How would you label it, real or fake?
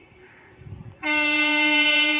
fake